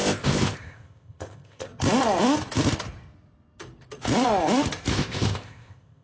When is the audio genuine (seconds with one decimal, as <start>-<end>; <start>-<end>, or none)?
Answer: 1.7-4.9